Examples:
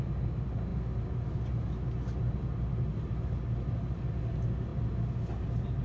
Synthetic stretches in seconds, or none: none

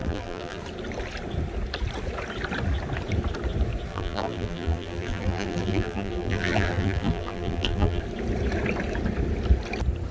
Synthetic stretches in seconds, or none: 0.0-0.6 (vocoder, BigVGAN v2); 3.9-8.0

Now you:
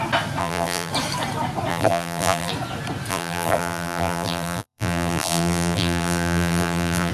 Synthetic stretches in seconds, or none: 0.4-0.9 (vocoder, BigVGAN v2); 1.7-2.5; 3.1-7.1

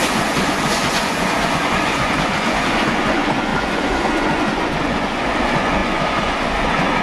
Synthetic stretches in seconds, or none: 0.0-7.0 (vocoder, Vocos)